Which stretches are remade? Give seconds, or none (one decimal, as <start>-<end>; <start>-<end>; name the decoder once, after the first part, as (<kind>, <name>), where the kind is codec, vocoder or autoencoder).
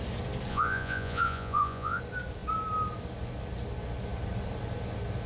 0.5-2.0 (vocoder, Vocos)